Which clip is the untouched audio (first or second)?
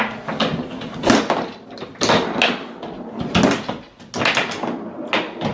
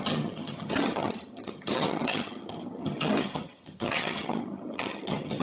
first